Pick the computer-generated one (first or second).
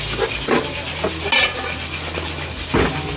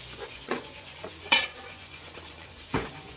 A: second